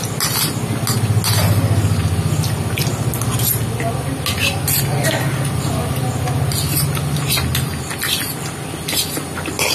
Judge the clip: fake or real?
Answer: real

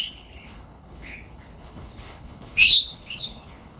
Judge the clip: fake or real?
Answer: fake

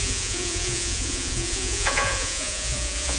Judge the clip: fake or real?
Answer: fake